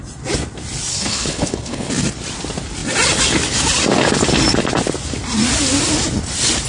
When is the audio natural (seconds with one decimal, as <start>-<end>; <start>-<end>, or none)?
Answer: 0.0-0.9; 1.9-6.7